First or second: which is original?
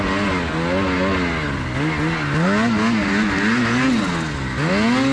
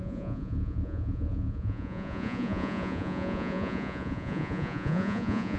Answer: first